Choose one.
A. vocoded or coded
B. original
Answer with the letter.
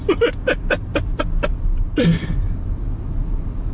B